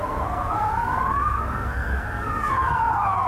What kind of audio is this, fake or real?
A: fake